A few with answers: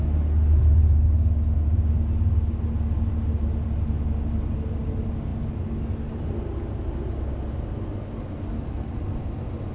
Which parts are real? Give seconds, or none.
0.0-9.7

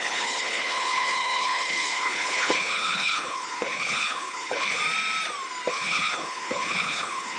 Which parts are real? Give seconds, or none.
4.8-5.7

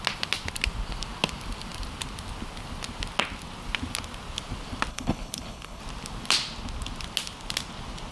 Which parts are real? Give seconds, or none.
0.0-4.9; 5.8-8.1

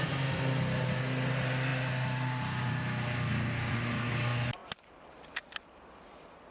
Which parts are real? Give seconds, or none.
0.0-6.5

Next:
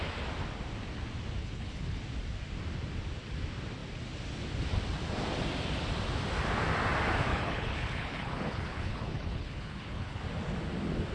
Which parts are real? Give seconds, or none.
0.0-1.4; 2.0-7.3; 10.2-11.1